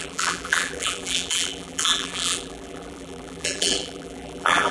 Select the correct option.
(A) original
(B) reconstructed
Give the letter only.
B